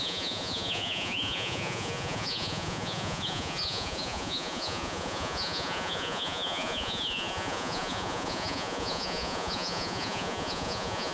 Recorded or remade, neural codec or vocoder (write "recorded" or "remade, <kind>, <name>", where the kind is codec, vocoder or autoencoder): remade, vocoder, Vocos